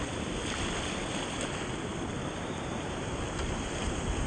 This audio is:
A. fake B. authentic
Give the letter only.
B